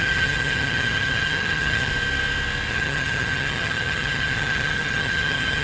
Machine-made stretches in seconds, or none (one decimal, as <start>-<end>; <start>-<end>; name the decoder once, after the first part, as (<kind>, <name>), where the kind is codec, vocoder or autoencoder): 0.0-1.9 (vocoder, HiFi-GAN); 2.7-5.6